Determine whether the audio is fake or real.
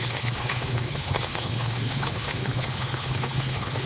fake